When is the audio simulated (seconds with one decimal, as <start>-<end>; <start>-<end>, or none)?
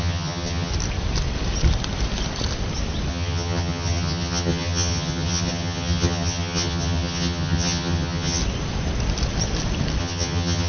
0.0-0.7; 3.1-8.4; 10.0-10.7